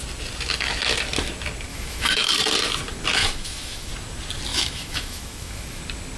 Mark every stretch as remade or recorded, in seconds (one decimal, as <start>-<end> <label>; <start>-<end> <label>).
0.0-1.7 recorded; 1.7-2.3 remade; 2.3-3.2 recorded; 3.2-3.9 remade; 3.9-4.5 recorded; 4.5-5.8 remade; 5.8-6.2 recorded